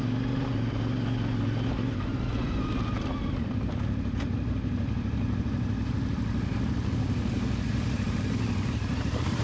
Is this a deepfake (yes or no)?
no